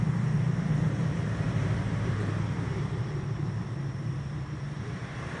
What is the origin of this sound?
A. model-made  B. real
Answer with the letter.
A